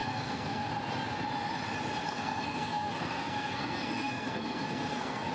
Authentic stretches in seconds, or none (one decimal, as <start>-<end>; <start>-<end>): 0.7-2.0